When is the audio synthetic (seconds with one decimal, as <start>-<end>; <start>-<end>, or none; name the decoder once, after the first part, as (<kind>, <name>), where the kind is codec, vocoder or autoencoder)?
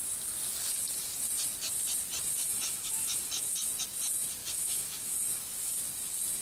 2.4-3.7 (autoencoder, DAC-VAE); 4.4-5.8